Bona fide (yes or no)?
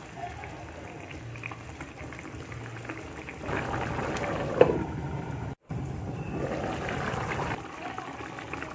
yes